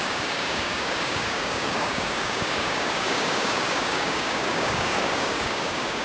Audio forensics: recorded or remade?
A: remade